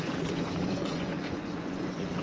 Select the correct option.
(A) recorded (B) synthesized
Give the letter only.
B